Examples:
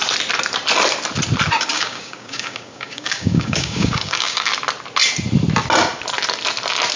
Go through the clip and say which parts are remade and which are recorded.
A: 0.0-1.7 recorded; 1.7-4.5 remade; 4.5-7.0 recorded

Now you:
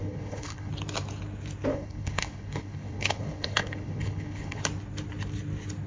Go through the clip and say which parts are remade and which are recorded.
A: 0.0-0.7 remade; 0.7-1.7 recorded; 1.7-4.6 remade; 4.6-5.9 recorded